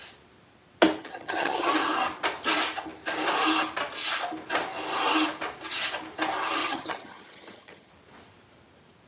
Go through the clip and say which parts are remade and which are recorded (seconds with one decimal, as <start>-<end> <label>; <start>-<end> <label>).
0.0-1.0 recorded; 1.0-1.7 remade; 1.7-6.6 recorded; 6.6-7.9 remade; 7.9-9.1 recorded